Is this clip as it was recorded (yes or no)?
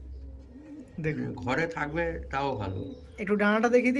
yes